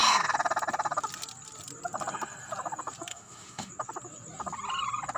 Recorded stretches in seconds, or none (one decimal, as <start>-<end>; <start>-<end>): 0.0-3.1; 3.7-5.2